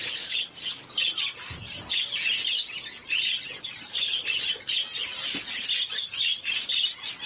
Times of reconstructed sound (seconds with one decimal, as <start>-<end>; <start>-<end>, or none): 0.0-7.3